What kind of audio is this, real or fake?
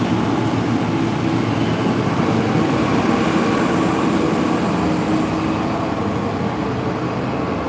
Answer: real